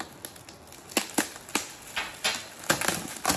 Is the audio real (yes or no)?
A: yes